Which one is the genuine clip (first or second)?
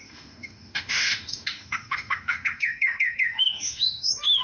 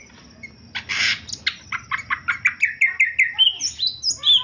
second